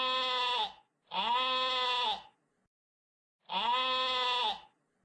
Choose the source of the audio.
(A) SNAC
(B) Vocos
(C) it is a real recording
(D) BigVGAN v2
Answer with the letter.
C